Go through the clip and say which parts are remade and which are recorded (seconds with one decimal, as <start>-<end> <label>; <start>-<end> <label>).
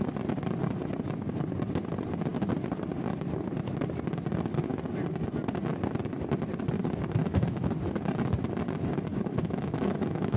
0.0-7.2 recorded; 7.2-7.7 remade; 7.7-9.1 recorded; 9.1-10.4 remade